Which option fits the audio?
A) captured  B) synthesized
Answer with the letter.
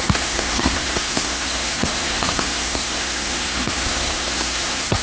B